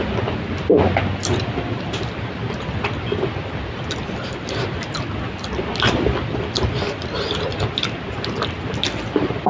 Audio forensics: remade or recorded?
recorded